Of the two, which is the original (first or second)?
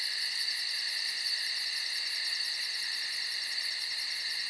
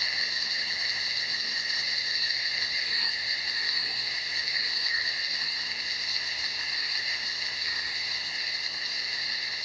first